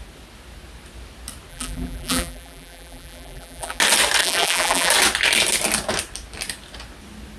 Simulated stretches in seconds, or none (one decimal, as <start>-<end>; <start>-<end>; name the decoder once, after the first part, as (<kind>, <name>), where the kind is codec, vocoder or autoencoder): 1.5-3.8 (vocoder, BigVGAN v2); 4.2-4.9